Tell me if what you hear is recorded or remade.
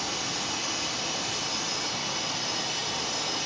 recorded